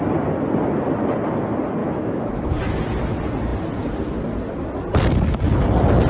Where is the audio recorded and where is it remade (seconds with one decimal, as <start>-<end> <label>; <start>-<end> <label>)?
0.0-1.8 recorded; 1.8-2.5 remade; 2.5-6.1 recorded